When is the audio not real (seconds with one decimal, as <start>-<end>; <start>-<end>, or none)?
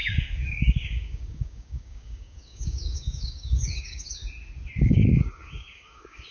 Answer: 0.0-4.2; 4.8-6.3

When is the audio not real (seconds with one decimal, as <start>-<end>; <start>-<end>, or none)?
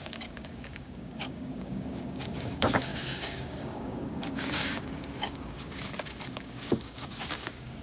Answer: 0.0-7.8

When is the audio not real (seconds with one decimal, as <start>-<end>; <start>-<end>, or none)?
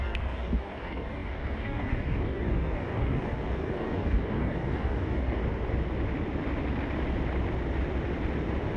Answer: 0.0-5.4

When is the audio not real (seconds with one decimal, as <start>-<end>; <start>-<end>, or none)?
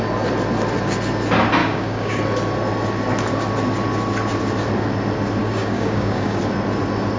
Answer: 1.6-2.2; 5.4-6.4